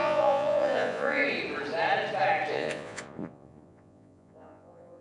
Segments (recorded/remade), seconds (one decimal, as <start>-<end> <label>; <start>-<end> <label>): 0.0-1.2 remade; 1.2-2.5 recorded; 2.5-5.0 remade